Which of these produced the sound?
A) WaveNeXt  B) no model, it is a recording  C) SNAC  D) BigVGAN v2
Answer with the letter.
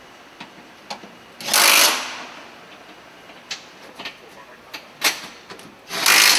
B